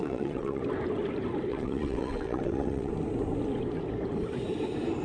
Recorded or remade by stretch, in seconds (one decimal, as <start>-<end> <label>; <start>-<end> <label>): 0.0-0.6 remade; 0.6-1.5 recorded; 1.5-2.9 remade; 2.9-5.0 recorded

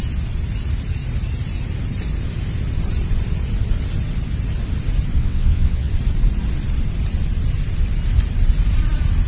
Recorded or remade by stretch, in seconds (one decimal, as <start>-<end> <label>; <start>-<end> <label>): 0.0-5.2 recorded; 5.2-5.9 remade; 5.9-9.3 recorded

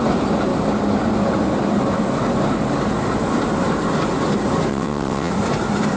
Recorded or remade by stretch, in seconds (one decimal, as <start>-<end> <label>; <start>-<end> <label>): 0.0-4.7 recorded; 4.7-5.3 remade; 5.3-6.0 recorded

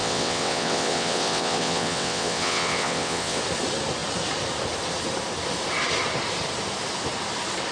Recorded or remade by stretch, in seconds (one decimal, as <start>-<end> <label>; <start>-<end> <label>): 0.0-3.4 remade; 3.4-7.7 recorded

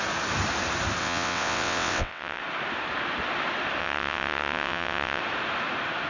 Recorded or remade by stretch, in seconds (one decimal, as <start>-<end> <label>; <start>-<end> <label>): 0.0-1.0 recorded; 1.0-2.4 remade; 2.4-3.8 recorded; 3.8-5.2 remade; 5.2-6.1 recorded

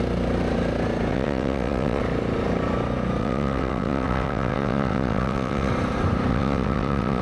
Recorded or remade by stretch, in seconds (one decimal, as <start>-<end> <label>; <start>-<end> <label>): 0.0-1.1 recorded; 1.1-2.0 remade; 2.0-3.2 recorded; 3.2-5.7 remade; 5.7-6.3 recorded; 6.3-7.2 remade

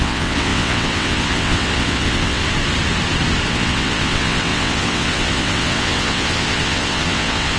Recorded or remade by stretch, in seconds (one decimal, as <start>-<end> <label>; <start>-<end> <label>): 0.0-2.4 remade; 2.4-3.5 recorded; 3.5-7.6 remade

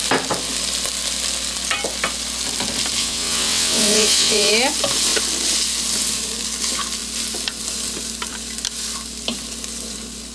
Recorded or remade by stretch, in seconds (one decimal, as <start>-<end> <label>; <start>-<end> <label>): 0.0-3.0 recorded; 3.0-4.5 remade; 4.5-10.3 recorded